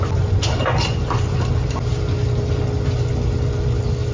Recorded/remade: recorded